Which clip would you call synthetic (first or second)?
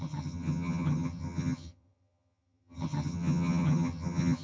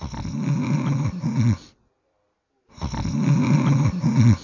first